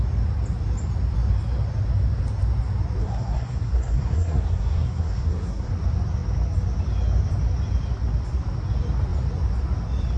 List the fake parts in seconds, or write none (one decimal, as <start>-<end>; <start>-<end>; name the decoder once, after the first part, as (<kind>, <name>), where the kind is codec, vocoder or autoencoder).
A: 3.0-5.7 (codec, SNAC)